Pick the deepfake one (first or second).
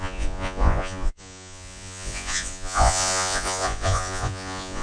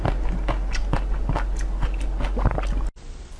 first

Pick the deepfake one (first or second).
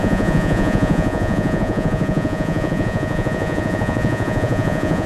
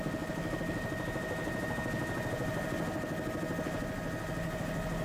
first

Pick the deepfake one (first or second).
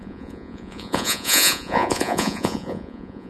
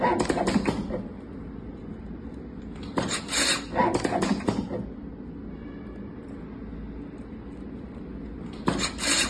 first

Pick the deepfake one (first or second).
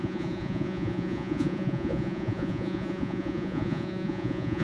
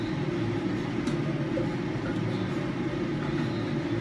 first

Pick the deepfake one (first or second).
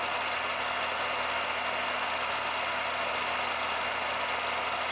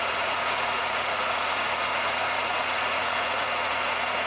second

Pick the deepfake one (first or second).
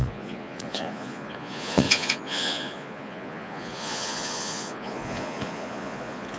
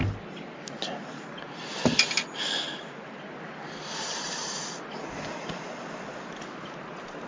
first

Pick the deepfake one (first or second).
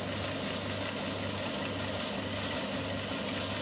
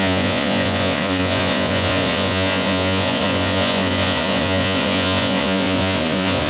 second